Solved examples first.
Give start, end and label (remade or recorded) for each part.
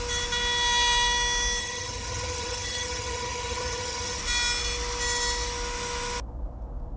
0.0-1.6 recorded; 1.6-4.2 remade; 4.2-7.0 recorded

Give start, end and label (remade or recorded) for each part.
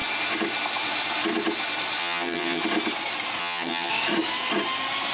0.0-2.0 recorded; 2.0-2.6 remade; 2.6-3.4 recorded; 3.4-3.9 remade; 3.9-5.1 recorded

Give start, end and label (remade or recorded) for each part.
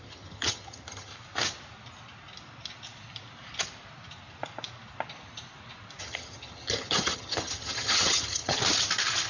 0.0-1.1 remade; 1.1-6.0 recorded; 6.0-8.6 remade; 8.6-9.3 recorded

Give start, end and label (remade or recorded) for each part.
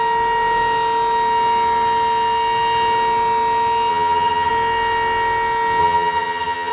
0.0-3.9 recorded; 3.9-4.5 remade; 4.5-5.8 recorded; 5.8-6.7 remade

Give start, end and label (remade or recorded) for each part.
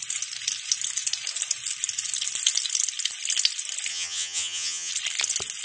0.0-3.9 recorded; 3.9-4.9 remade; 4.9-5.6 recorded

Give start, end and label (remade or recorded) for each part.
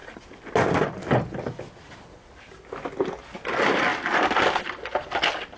0.0-5.6 recorded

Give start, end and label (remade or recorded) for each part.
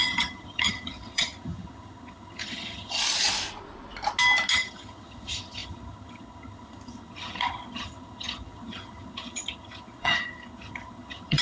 0.0-3.0 remade; 3.0-4.5 recorded; 4.5-11.4 remade